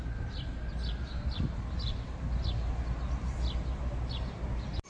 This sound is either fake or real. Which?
real